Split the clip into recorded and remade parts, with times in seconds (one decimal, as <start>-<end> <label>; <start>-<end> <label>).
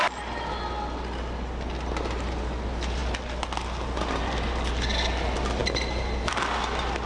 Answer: 0.0-7.1 recorded